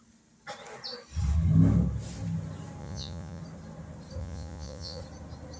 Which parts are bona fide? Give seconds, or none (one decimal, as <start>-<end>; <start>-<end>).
0.0-2.8; 3.4-4.2; 5.0-5.6